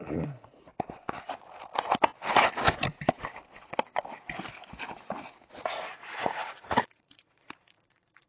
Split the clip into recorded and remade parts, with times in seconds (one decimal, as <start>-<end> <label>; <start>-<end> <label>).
0.0-0.7 remade; 0.7-5.7 recorded; 5.7-8.3 remade